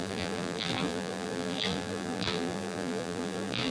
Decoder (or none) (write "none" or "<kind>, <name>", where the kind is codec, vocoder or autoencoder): vocoder, BigVGAN v2